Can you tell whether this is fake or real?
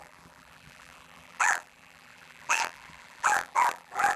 fake